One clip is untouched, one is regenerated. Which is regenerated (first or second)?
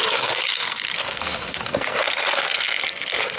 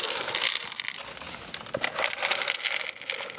first